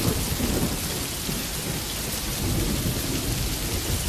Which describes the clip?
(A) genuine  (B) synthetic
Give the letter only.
A